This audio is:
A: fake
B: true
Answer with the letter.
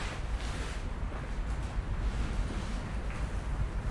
B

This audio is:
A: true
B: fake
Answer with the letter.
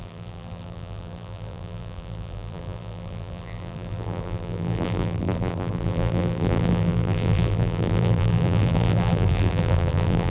B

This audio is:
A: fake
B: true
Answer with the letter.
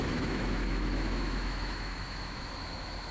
A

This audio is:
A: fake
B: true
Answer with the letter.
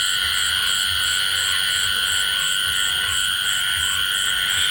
B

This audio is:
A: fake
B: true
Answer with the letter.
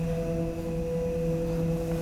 B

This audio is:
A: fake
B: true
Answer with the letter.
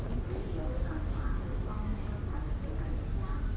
B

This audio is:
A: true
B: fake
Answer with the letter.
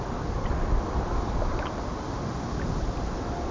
A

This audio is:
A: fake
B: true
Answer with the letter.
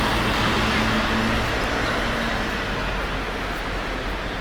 B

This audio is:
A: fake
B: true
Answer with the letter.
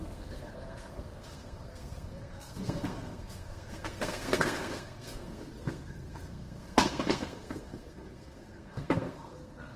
A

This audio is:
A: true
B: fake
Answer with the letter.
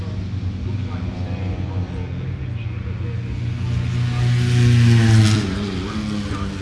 A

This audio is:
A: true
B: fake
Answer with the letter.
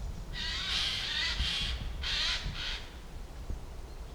B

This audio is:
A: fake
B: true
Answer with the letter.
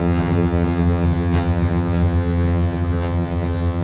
A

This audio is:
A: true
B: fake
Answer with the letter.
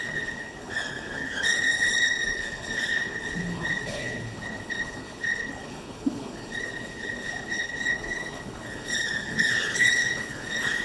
B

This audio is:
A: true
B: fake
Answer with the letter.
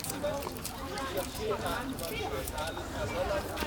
B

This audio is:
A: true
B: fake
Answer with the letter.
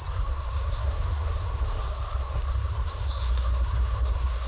B